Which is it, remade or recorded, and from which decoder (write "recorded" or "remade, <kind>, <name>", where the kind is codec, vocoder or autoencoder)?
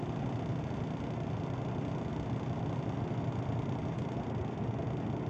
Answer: recorded